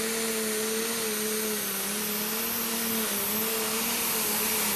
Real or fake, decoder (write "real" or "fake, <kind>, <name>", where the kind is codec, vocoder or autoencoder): real